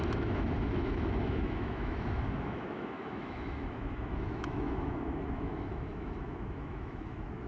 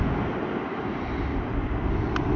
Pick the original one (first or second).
second